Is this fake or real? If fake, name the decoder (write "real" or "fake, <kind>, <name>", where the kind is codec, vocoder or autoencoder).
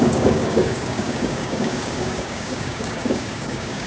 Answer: fake, codec, DAC